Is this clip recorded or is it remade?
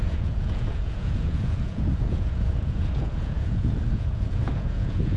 remade